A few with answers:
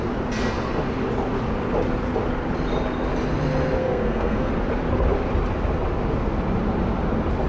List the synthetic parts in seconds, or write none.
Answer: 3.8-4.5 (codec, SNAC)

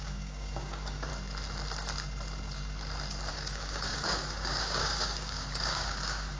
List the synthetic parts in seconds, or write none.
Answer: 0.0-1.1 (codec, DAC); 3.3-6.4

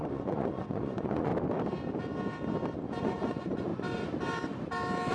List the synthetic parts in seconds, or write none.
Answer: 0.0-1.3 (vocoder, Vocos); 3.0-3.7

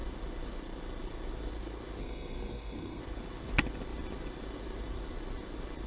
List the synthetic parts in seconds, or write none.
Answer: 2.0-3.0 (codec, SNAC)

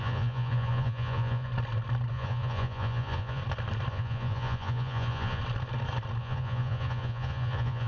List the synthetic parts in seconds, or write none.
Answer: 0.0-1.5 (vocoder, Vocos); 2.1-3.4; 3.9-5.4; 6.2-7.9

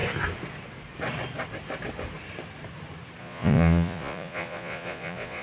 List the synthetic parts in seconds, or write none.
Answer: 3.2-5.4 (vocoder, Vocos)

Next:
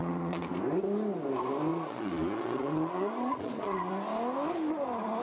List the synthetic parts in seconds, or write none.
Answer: 0.0-0.5 (vocoder, Vocos); 1.7-3.9

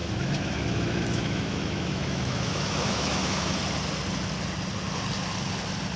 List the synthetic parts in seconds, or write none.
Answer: 0.0-3.6 (autoencoder, DAC-VAE)